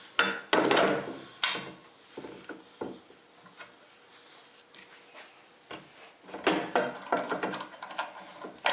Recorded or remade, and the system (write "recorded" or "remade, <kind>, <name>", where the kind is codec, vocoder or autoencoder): recorded